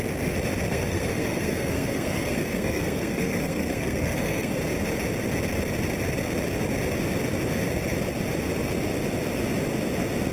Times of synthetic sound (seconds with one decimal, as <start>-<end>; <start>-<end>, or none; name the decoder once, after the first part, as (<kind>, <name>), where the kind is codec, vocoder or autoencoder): 0.7-4.6 (codec, SNAC)

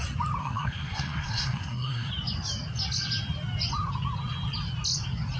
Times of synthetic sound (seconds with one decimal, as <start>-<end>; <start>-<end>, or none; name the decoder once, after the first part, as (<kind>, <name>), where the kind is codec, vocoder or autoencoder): 0.4-2.1 (codec, SNAC)

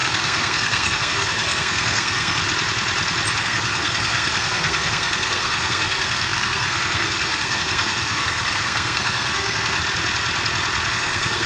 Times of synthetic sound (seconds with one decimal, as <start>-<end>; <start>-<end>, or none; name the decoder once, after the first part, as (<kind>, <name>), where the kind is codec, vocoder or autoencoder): 0.0-2.4 (codec, SNAC); 3.4-9.8; 10.9-11.5

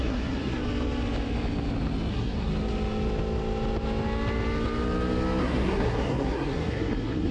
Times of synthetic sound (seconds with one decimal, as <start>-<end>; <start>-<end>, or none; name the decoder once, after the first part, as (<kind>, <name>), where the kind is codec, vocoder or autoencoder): 0.0-0.6 (codec, SNAC); 2.1-2.5; 5.4-7.3

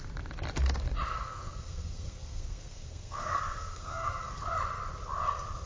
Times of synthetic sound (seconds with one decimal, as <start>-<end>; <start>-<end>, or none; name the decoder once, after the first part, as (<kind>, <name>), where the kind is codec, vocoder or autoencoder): 1.1-4.5 (codec, SNAC)

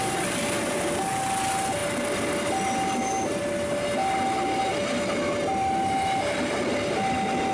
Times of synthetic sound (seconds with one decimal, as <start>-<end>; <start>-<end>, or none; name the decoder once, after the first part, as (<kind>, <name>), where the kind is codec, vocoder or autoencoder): none

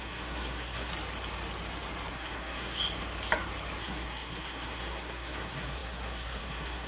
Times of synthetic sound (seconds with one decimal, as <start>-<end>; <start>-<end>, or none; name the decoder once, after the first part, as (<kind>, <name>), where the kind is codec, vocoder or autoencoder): 0.0-0.9 (codec, SNAC); 2.1-2.8; 3.8-6.9

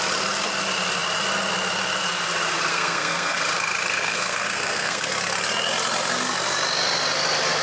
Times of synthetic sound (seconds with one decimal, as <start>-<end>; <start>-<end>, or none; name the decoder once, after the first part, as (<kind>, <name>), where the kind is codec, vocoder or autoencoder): 2.7-3.4 (codec, SNAC); 3.9-5.1